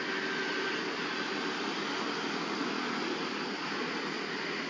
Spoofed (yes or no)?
no